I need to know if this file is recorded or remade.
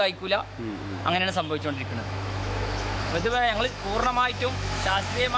remade